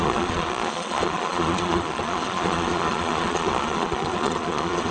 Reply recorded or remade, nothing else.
remade